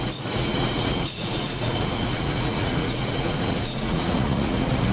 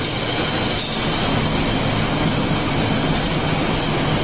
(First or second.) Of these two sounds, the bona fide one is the second